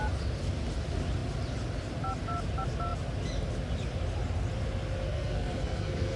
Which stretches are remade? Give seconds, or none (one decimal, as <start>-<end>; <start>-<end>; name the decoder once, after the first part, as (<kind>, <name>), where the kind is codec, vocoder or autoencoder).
5.1-6.2 (codec, SNAC)